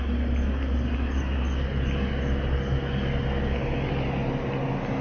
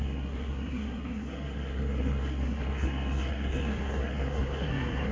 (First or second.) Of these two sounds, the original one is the first